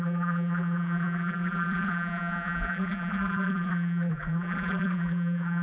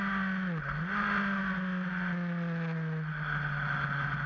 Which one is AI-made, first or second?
first